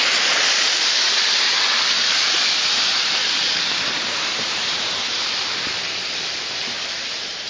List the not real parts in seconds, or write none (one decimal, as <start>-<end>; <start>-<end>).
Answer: 3.2-6.2